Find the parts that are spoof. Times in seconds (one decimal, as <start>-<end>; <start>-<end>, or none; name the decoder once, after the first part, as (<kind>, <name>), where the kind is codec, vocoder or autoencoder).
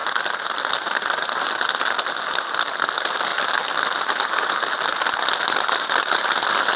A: none